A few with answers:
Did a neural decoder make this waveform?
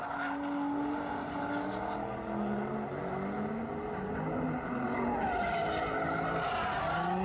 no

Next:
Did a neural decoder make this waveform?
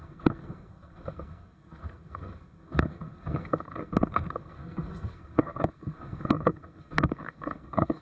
yes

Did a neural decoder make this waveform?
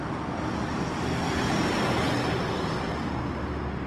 no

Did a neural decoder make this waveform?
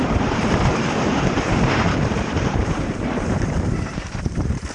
yes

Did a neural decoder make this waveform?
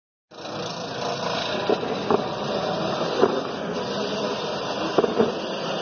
no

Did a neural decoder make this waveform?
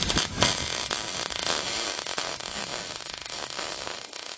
no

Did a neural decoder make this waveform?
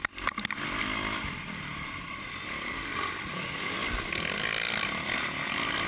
no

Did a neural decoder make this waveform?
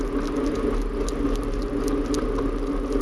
no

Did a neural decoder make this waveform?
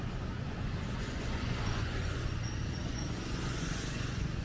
yes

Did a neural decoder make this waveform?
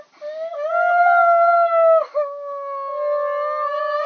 no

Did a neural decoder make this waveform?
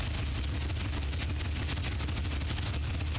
no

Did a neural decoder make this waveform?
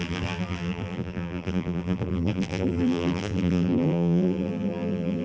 yes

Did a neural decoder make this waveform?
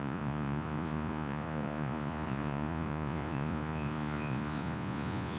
yes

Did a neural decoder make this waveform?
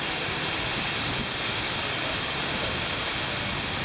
no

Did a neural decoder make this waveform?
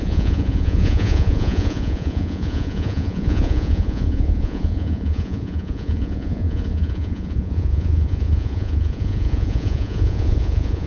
yes